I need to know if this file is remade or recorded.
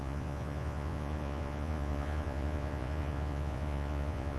remade